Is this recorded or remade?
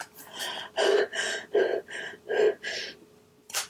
recorded